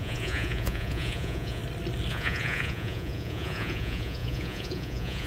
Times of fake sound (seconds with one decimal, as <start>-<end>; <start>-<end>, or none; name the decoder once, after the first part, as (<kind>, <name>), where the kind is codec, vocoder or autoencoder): 0.0-1.6 (vocoder, Vocos); 2.1-5.3